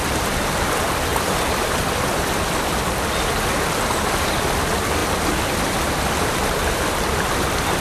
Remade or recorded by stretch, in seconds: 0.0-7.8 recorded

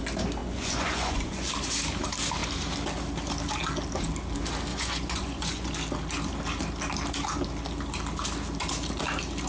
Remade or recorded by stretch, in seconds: 0.0-0.4 recorded; 0.4-1.5 remade; 1.5-4.7 recorded; 4.7-5.7 remade; 5.7-9.5 recorded

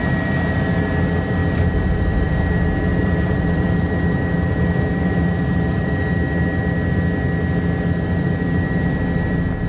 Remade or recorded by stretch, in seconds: 0.0-1.4 recorded; 1.4-2.4 remade; 2.4-2.9 recorded; 2.9-6.0 remade; 6.0-9.7 recorded

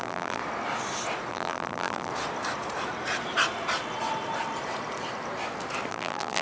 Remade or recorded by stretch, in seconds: 0.0-0.4 remade; 0.4-1.3 recorded; 1.3-2.1 remade; 2.1-5.9 recorded; 5.9-6.4 remade

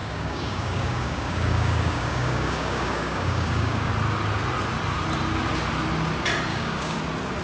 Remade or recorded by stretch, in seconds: 0.0-3.9 remade; 3.9-6.5 recorded; 6.5-7.0 remade; 7.0-7.4 recorded